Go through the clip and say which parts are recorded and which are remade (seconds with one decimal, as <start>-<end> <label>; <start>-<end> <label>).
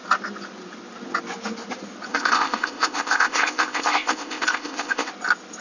0.0-2.1 recorded; 2.1-5.1 remade; 5.1-5.6 recorded